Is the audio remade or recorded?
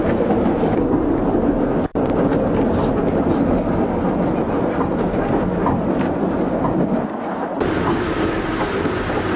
recorded